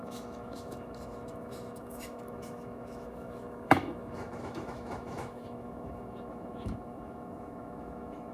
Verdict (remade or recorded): remade